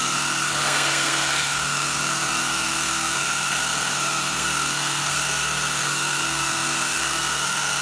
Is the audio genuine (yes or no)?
no